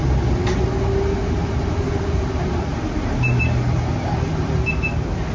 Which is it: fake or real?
real